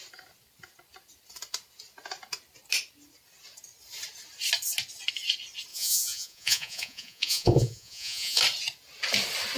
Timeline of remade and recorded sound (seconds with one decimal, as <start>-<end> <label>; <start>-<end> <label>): 0.0-5.7 recorded; 5.7-8.4 remade; 8.4-9.6 recorded